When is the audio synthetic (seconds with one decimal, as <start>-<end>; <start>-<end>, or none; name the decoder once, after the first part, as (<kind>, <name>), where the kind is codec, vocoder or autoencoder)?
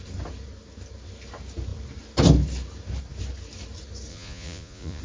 4.1-5.0 (vocoder, Vocos)